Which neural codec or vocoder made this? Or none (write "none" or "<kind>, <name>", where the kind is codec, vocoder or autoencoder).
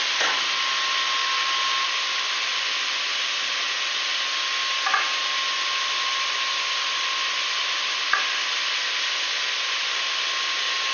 none